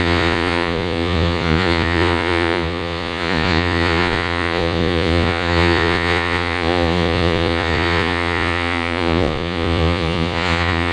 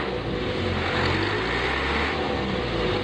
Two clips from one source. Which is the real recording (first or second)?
second